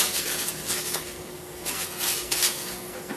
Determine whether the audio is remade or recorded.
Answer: remade